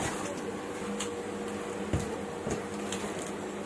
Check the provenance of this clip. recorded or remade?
recorded